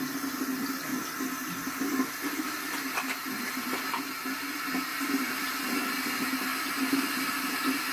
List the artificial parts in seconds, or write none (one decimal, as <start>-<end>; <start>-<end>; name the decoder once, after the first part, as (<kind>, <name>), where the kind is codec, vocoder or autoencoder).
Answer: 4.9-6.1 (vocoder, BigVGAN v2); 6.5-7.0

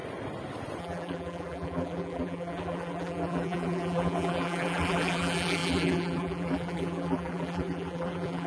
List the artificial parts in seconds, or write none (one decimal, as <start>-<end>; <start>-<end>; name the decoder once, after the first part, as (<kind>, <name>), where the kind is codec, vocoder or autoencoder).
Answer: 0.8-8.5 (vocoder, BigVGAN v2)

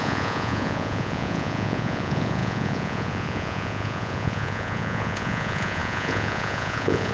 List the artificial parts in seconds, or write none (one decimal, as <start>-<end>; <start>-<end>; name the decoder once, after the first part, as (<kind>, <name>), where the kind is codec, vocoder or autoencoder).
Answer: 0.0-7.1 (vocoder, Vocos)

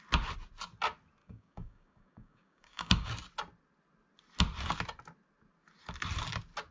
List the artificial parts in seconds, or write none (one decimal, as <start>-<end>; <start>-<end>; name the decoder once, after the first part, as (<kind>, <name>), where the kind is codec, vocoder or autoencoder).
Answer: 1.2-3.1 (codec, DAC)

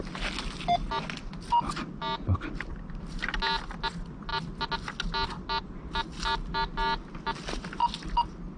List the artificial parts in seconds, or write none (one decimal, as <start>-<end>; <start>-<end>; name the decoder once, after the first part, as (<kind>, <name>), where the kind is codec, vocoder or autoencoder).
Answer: 2.3-3.2 (vocoder, BigVGAN v2)